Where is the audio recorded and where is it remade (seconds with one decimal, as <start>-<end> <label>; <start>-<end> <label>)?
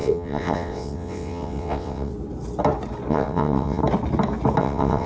0.0-2.1 remade; 2.1-3.1 recorded; 3.1-3.8 remade; 3.8-4.6 recorded; 4.6-5.1 remade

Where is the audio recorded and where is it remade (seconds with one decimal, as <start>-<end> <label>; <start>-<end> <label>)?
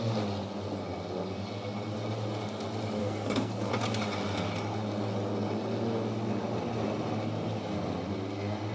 0.0-3.0 recorded; 3.0-3.7 remade; 3.7-8.7 recorded